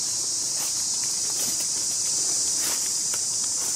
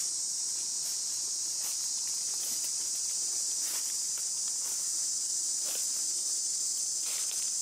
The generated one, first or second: first